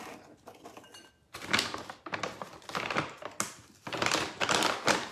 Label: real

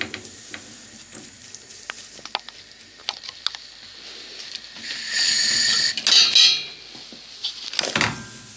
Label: real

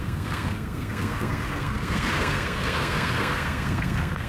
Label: fake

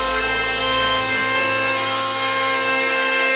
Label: fake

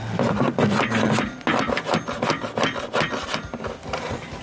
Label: real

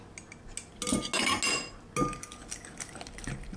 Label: real